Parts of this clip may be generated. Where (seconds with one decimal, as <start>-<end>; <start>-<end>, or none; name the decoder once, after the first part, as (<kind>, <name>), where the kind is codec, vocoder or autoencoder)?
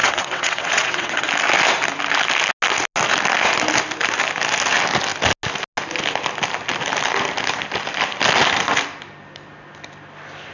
0.0-1.3 (vocoder, WaveNeXt)